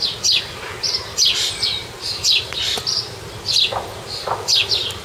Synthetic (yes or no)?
no